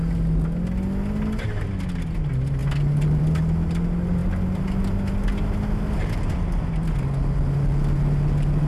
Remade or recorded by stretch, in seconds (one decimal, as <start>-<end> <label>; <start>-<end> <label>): 0.0-8.7 recorded